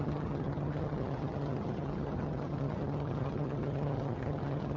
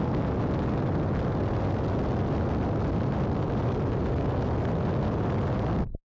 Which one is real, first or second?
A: second